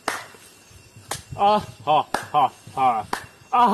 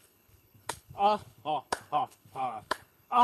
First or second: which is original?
first